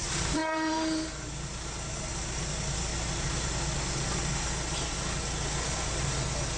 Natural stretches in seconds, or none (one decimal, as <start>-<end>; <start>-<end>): 2.9-6.6